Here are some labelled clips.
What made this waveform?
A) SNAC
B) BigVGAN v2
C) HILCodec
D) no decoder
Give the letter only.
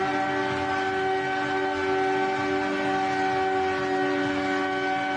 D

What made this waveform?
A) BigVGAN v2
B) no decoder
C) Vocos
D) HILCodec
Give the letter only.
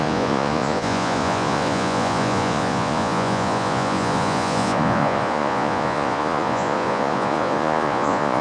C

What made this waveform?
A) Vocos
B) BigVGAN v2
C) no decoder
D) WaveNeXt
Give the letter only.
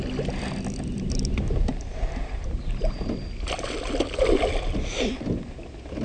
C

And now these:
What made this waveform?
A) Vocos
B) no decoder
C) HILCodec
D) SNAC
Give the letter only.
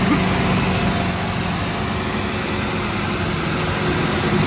B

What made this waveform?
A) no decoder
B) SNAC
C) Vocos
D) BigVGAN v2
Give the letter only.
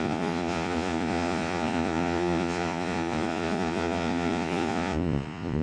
C